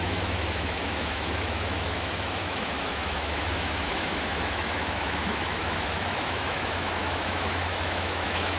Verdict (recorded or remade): remade